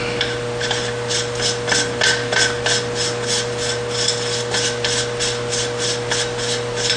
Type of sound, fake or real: real